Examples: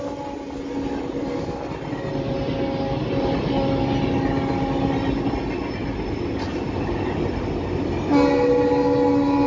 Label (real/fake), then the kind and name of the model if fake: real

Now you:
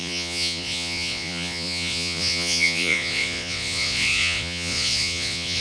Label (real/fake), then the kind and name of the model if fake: fake, vocoder, Vocos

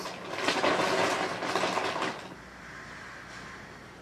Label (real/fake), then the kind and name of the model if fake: real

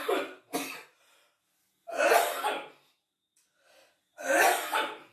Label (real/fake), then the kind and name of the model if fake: real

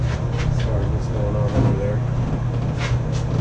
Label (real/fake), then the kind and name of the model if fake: real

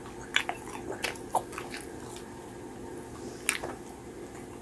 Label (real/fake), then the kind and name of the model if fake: real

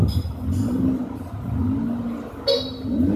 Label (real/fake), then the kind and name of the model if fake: real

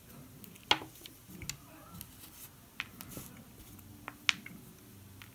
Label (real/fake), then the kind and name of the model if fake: real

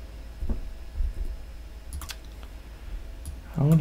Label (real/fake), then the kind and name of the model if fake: real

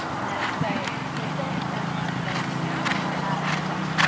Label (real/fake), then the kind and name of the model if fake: real